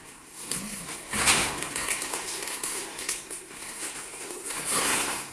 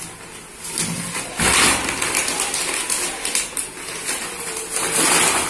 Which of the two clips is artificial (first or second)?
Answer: first